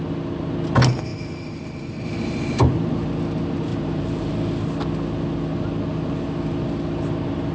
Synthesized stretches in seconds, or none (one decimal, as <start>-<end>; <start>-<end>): 1.1-2.9; 3.7-4.3